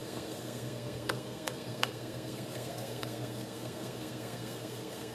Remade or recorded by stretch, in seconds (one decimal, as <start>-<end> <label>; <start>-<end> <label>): 0.0-5.1 remade